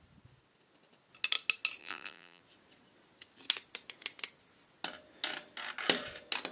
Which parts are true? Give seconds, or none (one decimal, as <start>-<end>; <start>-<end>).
0.0-1.8; 2.4-6.5